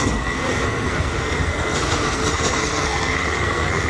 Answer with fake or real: fake